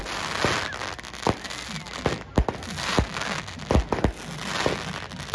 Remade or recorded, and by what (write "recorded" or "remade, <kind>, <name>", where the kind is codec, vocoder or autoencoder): recorded